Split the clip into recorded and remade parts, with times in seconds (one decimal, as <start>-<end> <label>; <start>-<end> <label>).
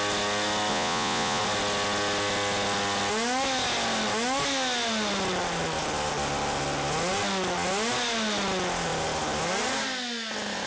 0.0-0.7 recorded; 0.7-1.4 remade; 1.4-10.7 recorded